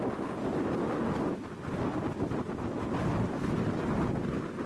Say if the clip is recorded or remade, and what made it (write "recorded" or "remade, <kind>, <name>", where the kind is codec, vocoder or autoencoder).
recorded